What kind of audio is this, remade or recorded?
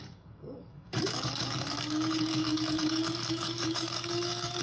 remade